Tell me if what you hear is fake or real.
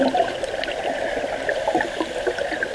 real